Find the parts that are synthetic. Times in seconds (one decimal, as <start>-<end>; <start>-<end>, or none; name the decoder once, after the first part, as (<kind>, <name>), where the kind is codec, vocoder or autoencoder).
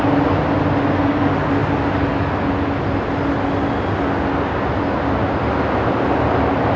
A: none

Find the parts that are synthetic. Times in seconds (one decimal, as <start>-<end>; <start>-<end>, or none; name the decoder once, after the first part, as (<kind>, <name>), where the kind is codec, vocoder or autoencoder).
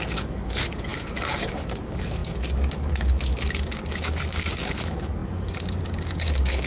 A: 0.0-6.7 (codec, DAC)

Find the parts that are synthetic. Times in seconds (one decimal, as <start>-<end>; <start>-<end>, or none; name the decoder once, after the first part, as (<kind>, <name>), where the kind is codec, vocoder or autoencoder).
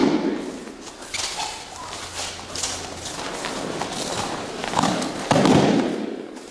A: 4.6-5.1 (codec, DAC); 5.9-6.5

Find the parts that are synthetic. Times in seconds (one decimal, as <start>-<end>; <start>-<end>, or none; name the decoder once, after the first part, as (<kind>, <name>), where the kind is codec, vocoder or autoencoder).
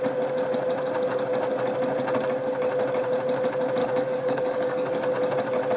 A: 3.8-5.1 (codec, DAC)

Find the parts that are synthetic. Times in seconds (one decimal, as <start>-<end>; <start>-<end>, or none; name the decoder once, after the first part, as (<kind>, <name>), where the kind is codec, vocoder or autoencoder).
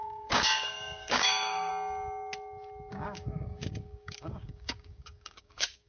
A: 0.0-1.7 (codec, DAC); 2.9-5.9